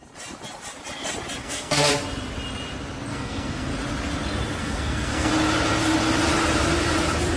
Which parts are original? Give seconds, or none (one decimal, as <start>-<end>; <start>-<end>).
0.0-1.4; 1.9-3.1; 3.7-4.6; 5.3-7.4